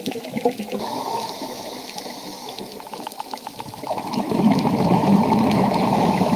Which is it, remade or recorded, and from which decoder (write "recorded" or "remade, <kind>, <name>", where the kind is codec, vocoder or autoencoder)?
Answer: remade, autoencoder, DAC-VAE